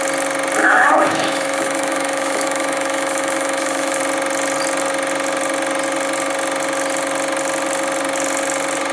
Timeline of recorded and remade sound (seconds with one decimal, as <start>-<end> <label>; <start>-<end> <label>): 0.0-0.6 recorded; 0.6-4.0 remade; 4.0-8.9 recorded